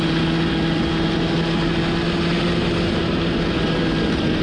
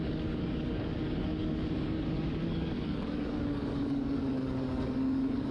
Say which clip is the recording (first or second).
first